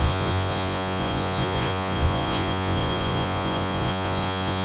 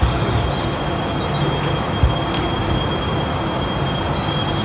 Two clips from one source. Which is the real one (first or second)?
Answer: second